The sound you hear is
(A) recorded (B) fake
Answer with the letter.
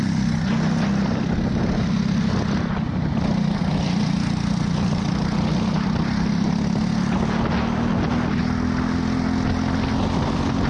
A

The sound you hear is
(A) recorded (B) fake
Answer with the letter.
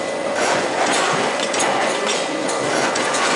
B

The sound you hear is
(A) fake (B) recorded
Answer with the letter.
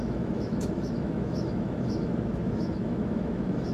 A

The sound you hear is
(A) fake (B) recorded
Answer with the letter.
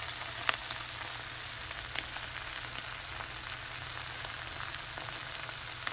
B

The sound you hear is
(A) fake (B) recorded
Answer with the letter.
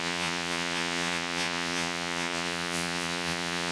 A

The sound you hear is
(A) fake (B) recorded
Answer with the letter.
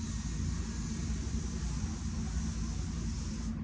B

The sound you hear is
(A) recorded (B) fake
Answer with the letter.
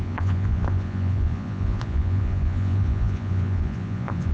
B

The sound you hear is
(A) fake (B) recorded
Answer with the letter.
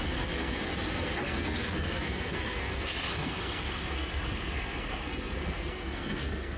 A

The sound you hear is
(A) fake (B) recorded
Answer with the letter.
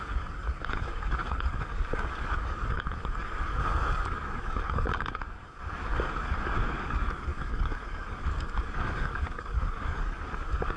A